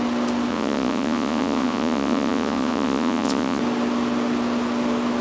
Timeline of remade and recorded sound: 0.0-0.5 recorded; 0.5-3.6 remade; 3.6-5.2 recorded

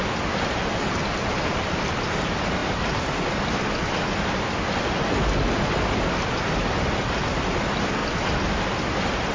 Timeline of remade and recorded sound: 0.0-9.3 recorded

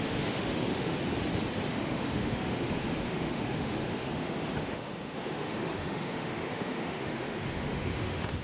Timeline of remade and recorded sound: 0.0-0.9 remade; 0.9-1.7 recorded; 1.7-8.4 remade

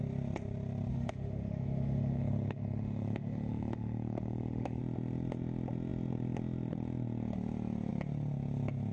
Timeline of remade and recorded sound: 0.0-0.9 recorded; 0.9-4.8 remade; 4.8-8.9 recorded